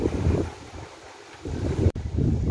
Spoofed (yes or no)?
no